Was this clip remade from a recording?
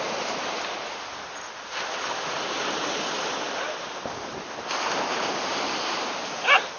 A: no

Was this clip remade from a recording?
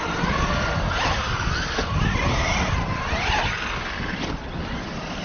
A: no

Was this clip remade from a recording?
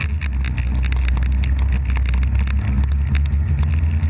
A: no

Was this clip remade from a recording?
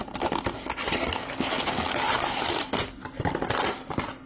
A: no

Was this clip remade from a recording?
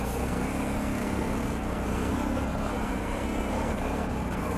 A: yes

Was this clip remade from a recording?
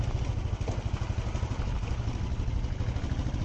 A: no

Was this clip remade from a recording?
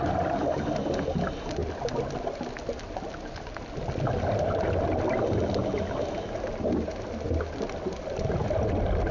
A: no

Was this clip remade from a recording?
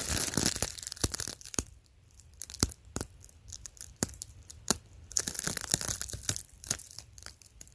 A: yes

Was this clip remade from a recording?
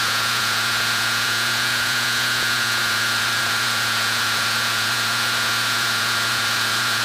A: yes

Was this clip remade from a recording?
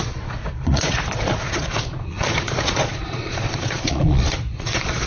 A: yes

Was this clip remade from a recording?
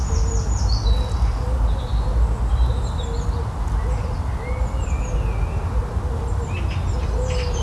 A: no